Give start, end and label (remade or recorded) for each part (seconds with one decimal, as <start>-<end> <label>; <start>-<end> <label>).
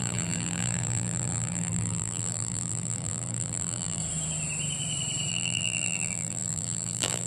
0.0-4.0 remade; 4.0-5.3 recorded; 5.3-7.3 remade